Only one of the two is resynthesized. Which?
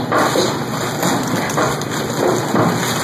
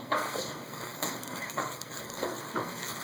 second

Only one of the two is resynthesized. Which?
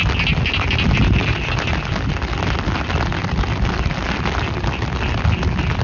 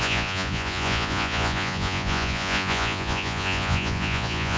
second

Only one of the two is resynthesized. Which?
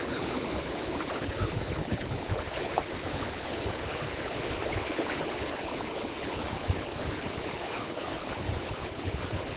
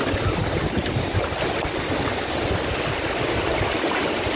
first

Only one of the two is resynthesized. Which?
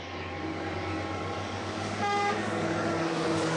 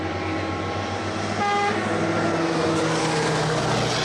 first